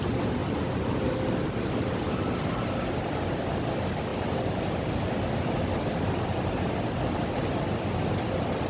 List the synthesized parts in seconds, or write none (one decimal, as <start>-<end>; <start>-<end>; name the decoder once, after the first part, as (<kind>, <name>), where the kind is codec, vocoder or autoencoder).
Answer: 0.4-1.1 (vocoder, BigVGAN v2)